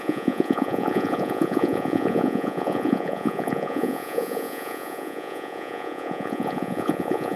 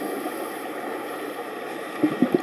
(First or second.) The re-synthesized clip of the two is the first